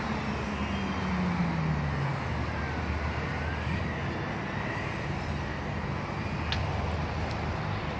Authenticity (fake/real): real